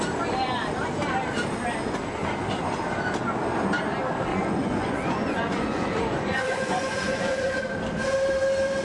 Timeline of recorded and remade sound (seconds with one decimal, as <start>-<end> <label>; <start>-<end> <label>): 0.0-4.3 recorded; 4.3-7.6 remade; 7.6-8.8 recorded